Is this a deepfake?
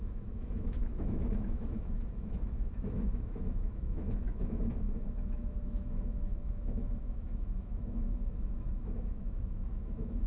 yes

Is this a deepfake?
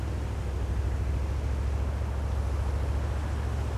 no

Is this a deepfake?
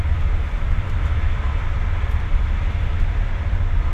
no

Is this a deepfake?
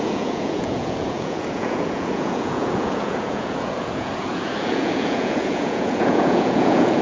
yes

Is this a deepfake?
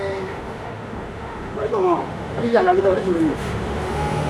yes